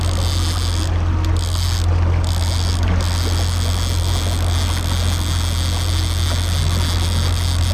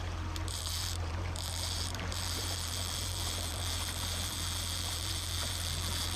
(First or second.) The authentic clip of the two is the first